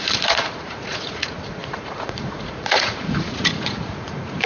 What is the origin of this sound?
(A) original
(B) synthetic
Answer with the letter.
B